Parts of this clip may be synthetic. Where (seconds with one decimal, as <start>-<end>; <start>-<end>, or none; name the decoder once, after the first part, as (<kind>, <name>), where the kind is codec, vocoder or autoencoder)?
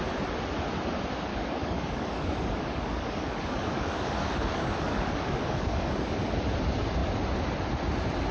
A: 1.3-6.1 (codec, DAC)